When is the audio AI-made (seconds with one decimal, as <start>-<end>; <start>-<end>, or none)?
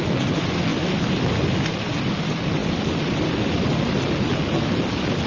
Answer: 2.6-4.1